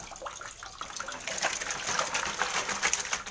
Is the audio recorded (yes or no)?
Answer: yes